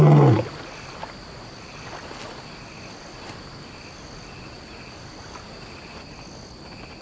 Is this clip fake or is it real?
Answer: real